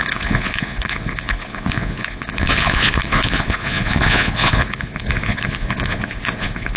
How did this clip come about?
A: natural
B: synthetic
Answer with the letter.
B